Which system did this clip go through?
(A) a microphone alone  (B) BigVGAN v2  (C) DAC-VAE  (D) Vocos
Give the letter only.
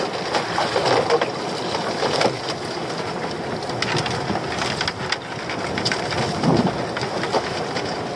A